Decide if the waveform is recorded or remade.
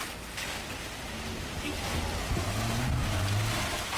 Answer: recorded